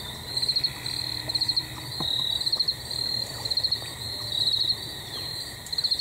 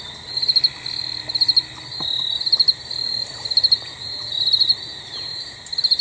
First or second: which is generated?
first